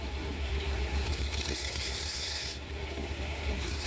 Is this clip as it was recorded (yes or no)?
no